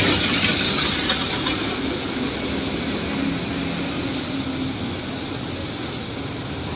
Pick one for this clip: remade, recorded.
recorded